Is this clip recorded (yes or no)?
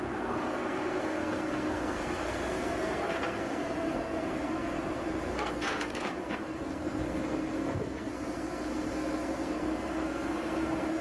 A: no